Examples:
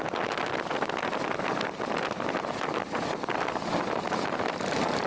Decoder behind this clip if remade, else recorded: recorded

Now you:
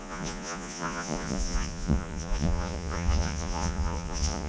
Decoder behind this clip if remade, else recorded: remade, vocoder, Vocos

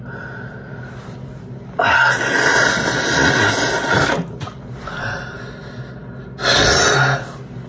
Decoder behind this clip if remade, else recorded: recorded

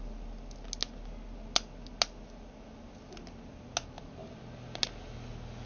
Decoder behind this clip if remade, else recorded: recorded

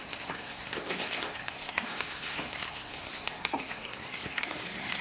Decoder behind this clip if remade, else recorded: remade, codec, SNAC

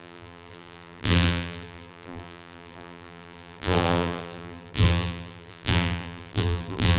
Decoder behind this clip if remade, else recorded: remade, vocoder, BigVGAN v2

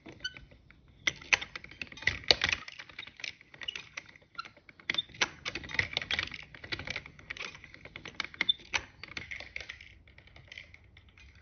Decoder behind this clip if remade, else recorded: recorded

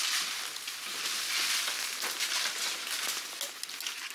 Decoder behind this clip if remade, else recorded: recorded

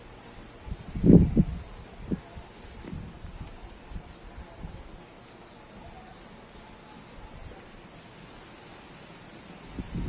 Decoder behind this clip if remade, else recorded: recorded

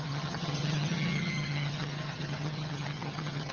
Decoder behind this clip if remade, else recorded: remade, vocoder, HiFi-GAN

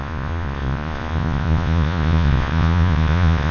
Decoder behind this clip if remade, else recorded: remade, vocoder, Vocos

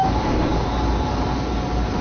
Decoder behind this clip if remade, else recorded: recorded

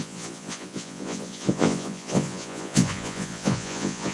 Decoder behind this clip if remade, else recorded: remade, vocoder, Vocos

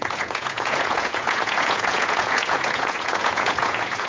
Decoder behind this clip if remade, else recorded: remade, vocoder, Vocos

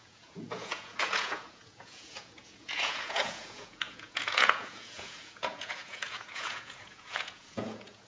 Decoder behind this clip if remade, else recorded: remade, vocoder, Vocos